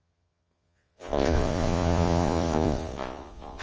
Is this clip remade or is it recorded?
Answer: remade